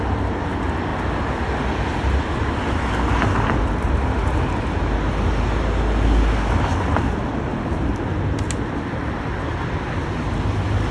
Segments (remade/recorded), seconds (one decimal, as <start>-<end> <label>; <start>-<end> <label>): 0.0-10.9 recorded